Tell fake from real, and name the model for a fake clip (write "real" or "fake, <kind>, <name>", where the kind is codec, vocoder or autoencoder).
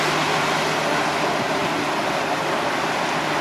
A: real